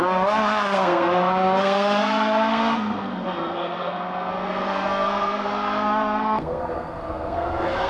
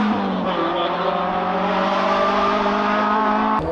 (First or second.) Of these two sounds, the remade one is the first